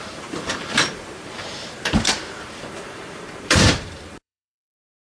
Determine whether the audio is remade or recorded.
remade